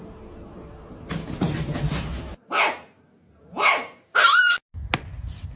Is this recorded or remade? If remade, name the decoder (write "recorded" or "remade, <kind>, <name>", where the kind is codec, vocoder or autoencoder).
recorded